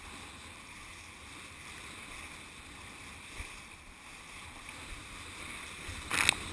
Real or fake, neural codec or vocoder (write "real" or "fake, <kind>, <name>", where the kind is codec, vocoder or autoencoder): real